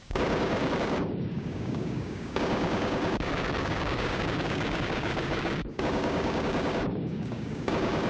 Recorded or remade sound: remade